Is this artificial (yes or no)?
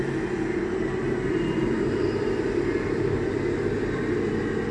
no